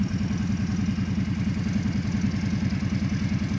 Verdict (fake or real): real